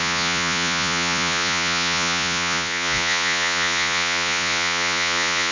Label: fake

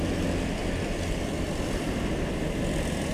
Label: real